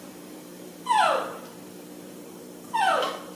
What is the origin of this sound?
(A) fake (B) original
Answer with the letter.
A